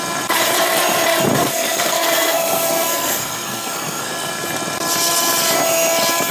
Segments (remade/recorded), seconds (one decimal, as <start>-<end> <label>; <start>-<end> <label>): 0.0-1.4 recorded; 1.4-4.1 remade; 4.1-6.3 recorded